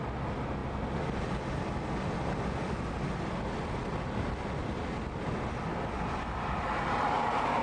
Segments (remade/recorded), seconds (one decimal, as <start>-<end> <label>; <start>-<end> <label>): 0.0-7.6 recorded